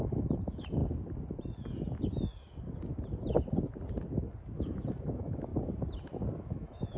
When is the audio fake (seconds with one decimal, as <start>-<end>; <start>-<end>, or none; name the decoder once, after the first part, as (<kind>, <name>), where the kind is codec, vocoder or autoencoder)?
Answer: 0.0-0.8 (autoencoder, DAC-VAE); 5.0-5.5; 6.4-7.0